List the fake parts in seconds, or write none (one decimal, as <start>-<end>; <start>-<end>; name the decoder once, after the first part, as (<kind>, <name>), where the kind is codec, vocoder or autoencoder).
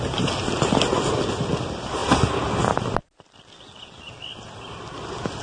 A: none